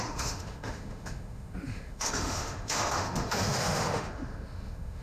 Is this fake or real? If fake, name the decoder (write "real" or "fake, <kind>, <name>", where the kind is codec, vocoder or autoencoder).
fake, autoencoder, DAC-VAE